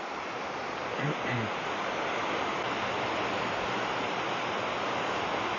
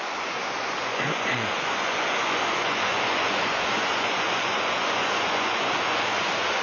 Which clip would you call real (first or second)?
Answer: first